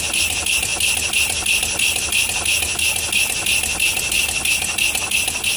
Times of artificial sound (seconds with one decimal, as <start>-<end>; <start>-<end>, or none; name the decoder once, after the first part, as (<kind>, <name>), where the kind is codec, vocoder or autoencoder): none